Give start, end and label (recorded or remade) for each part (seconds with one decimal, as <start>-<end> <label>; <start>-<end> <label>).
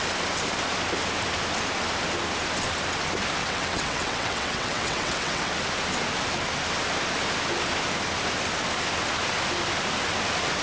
0.0-3.4 recorded; 3.4-5.5 remade; 5.5-10.6 recorded